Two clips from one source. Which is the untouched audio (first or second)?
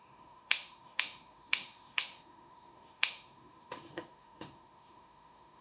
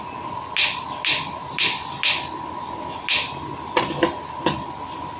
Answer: second